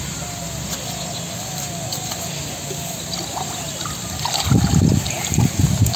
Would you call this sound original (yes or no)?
yes